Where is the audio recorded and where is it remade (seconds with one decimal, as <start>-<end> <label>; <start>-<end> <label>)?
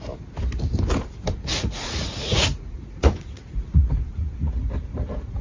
0.0-1.5 recorded; 1.5-4.7 remade; 4.7-5.4 recorded